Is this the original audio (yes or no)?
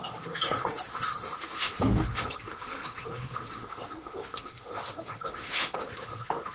no